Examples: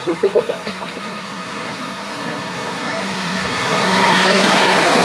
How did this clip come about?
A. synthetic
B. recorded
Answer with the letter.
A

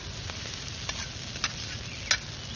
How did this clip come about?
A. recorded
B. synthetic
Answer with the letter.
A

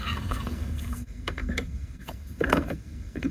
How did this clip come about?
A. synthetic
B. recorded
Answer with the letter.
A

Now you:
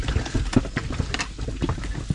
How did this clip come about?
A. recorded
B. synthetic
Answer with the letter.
A